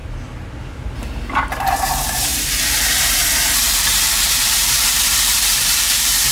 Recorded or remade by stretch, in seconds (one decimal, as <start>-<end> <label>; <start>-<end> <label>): 0.0-0.6 recorded; 0.6-6.3 remade